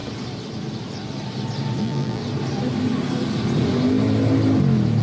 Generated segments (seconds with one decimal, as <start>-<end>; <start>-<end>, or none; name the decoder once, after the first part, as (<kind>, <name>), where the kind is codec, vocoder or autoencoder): 1.8-2.2 (vocoder, BigVGAN v2)